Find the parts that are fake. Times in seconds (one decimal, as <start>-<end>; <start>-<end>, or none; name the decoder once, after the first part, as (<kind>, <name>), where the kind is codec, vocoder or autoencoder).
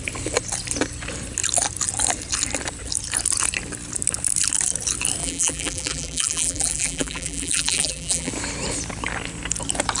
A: 5.2-8.3 (vocoder, BigVGAN v2)